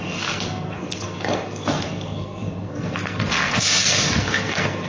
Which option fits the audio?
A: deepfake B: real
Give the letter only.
A